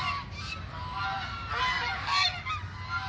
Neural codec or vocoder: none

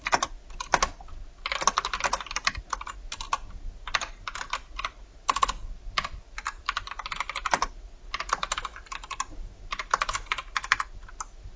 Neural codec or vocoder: none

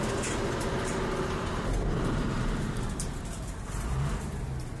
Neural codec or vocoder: none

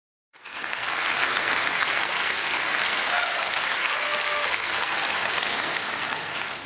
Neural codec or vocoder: codec, SNAC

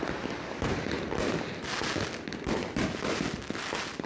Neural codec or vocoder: none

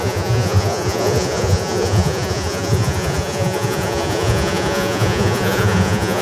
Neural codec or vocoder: vocoder, Vocos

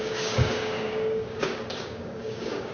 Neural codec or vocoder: codec, DAC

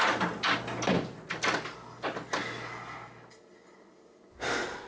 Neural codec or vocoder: none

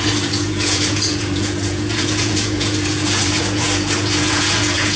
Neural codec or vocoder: vocoder, Vocos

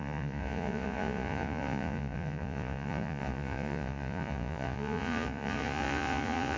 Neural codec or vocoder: vocoder, Vocos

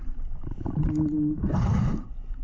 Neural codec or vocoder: none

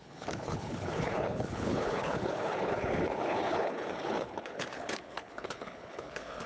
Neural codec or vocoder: codec, HILCodec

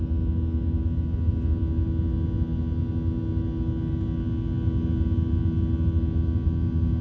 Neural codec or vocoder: none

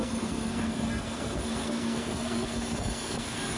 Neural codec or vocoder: codec, SNAC